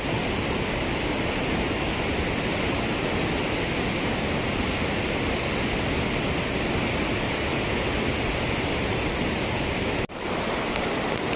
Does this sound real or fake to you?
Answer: real